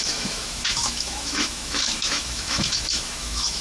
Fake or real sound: fake